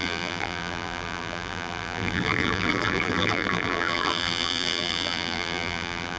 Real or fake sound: fake